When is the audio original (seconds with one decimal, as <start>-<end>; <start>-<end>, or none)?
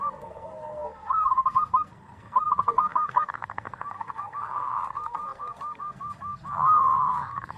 none